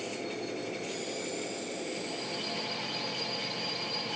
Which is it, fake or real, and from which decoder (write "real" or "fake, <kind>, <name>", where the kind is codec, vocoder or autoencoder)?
real